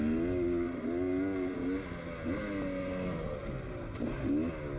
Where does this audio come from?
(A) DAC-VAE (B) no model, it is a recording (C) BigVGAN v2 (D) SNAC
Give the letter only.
B